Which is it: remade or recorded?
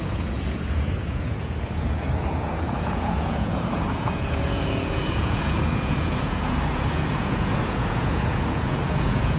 remade